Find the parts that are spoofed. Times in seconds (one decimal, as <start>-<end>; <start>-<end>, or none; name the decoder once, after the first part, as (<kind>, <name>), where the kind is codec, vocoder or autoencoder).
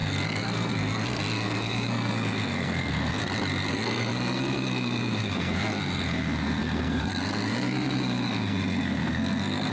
0.0-3.2 (codec, SNAC); 3.7-9.7